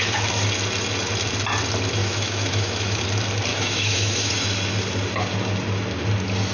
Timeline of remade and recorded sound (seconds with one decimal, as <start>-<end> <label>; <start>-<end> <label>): 0.0-2.0 recorded; 2.0-3.0 remade; 3.0-3.5 recorded; 3.5-4.3 remade; 4.3-6.5 recorded